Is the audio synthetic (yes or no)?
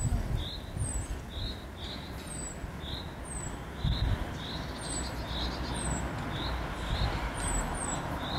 no